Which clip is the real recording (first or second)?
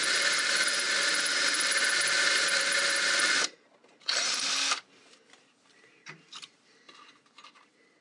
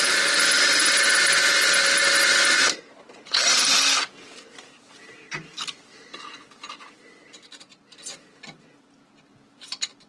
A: second